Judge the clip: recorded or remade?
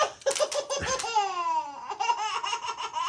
recorded